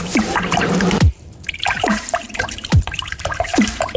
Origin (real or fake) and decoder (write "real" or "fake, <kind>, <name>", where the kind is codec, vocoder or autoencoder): fake, vocoder, BigVGAN v2